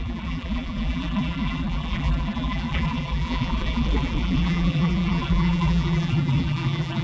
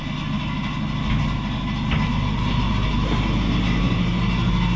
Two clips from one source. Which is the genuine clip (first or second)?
second